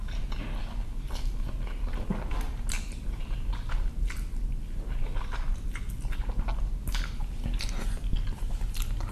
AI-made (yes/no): no